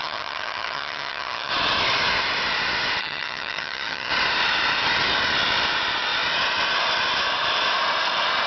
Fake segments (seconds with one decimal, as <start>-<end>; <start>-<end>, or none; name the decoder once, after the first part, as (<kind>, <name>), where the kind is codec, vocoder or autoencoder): 0.0-1.5 (vocoder, HiFi-GAN); 3.0-4.1